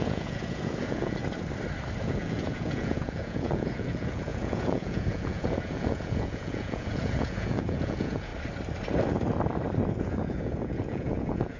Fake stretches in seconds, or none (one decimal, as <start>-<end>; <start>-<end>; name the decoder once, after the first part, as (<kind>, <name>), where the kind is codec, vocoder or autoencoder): 0.0-1.2 (vocoder, Vocos); 2.0-8.3; 10.0-11.6